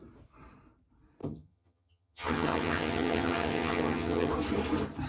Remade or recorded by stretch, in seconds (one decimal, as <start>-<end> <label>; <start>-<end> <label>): 0.0-1.2 recorded; 1.2-4.3 remade; 4.3-5.1 recorded